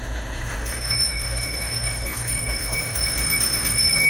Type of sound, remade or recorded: remade